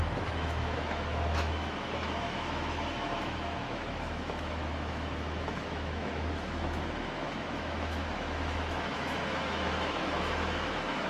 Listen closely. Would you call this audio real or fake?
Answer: fake